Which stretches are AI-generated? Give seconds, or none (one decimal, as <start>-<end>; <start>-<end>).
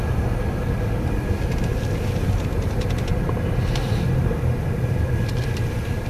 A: 4.2-5.3